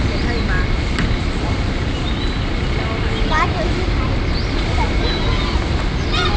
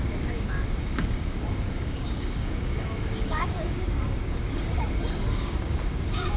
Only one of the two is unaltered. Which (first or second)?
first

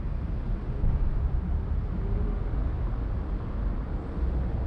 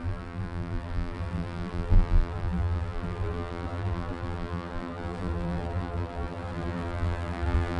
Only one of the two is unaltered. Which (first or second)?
first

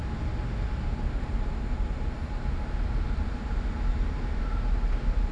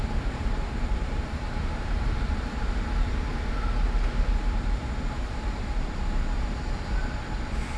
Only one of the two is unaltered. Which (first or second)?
first